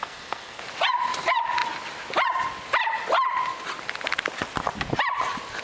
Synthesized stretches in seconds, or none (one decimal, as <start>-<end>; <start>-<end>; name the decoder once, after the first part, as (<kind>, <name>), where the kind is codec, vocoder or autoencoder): 0.0-0.6 (codec, SNAC)